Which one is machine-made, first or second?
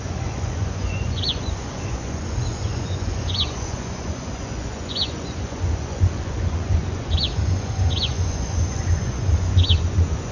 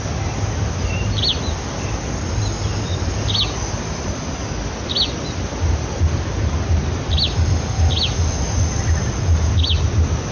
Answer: first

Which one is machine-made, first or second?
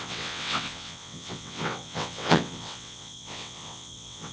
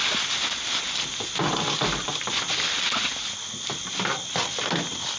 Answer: first